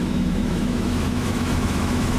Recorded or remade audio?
remade